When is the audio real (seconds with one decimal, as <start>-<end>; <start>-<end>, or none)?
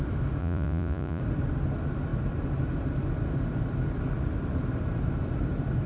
0.0-0.4; 1.2-5.9